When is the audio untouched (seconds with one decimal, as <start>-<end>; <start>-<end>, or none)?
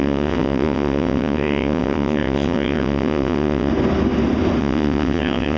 3.7-4.6